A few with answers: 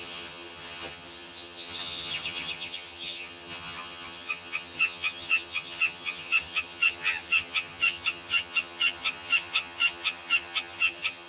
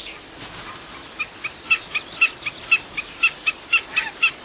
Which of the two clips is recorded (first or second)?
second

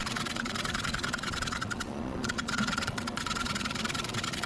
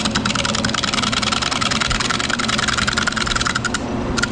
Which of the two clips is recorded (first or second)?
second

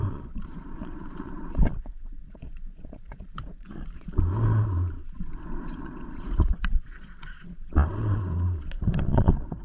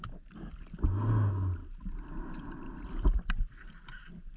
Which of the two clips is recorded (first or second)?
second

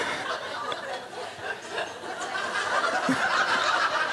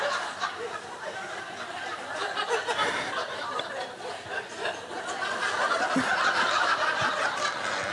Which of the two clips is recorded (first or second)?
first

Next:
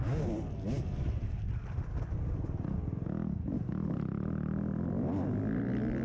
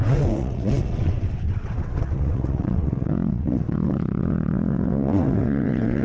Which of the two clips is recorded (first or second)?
first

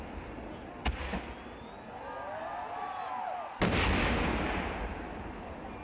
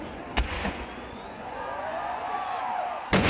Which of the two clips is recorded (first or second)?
first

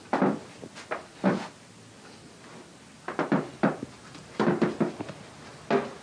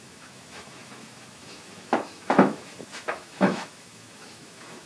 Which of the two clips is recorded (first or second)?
first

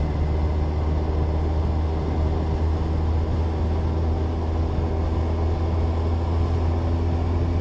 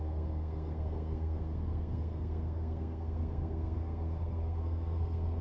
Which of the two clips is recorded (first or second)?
first